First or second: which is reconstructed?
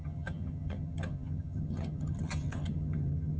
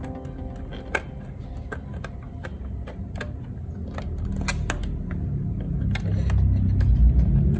first